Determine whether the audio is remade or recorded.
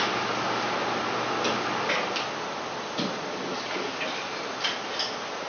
recorded